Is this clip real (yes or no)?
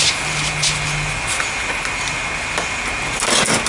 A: yes